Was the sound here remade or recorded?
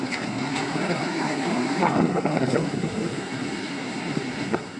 remade